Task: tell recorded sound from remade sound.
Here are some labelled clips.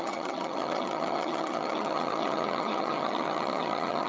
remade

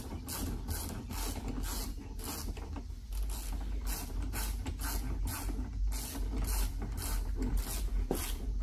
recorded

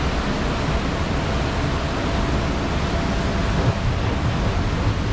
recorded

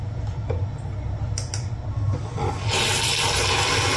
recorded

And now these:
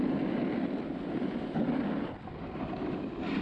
recorded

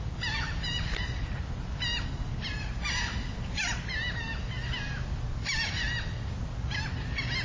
recorded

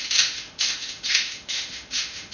remade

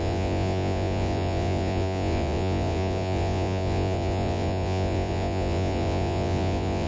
remade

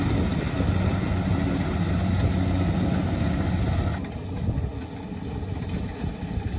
recorded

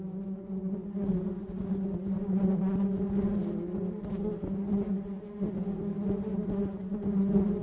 recorded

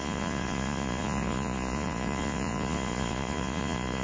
remade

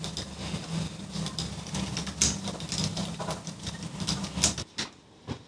recorded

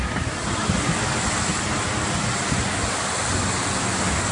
recorded